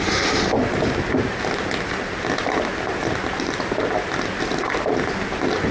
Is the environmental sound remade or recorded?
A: recorded